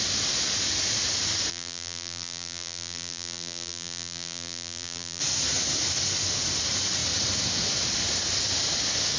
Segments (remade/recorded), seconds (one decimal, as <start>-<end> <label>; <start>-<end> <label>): 0.0-1.5 recorded; 1.5-5.2 remade; 5.2-9.2 recorded